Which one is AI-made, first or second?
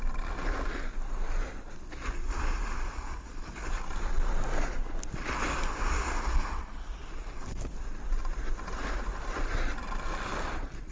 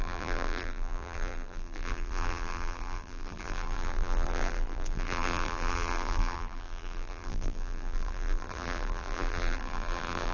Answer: second